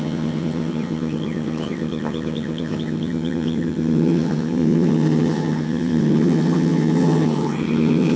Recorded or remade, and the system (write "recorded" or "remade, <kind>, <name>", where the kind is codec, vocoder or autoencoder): remade, vocoder, HiFi-GAN